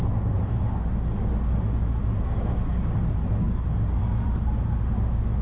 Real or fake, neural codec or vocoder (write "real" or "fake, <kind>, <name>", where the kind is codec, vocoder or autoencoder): real